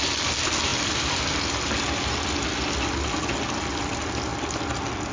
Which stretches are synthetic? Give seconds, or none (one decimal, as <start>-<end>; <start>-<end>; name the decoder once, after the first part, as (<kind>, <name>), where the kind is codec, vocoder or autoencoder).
none